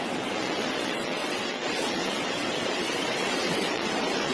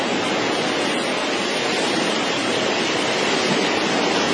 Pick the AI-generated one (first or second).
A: first